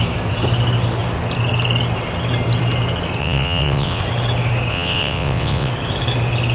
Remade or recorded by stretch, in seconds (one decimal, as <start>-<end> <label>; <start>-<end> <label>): 0.0-3.2 recorded; 3.2-4.0 remade; 4.0-4.7 recorded; 4.7-5.7 remade; 5.7-6.5 recorded